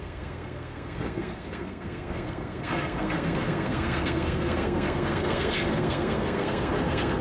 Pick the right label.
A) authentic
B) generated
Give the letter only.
B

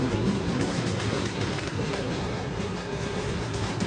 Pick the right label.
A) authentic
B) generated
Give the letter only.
B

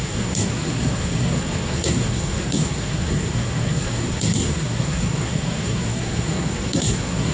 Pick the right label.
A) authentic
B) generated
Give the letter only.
B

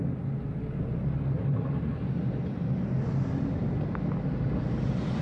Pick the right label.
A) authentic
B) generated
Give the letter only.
A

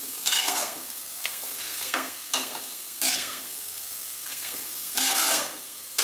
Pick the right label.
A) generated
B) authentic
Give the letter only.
A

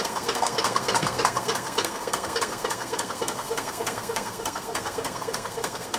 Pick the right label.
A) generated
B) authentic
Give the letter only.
A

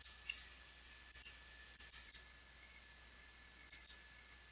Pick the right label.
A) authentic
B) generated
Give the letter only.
A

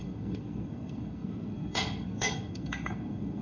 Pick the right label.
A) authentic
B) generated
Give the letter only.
B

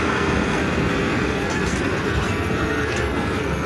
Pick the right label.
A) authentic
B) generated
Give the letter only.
B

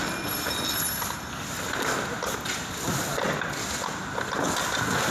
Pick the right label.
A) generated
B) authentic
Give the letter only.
B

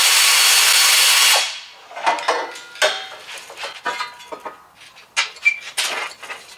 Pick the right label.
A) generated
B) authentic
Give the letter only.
B